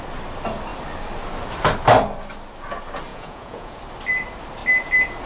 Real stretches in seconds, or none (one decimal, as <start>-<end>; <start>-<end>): 0.0-3.1; 3.8-5.3